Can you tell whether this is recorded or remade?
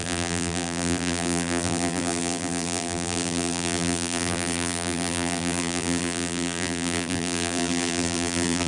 remade